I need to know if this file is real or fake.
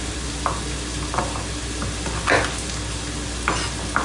real